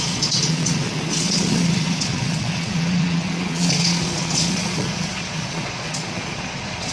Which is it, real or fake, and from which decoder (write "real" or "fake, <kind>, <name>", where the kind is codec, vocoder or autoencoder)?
fake, vocoder, Vocos